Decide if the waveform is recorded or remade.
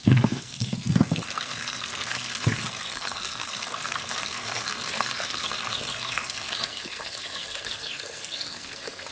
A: remade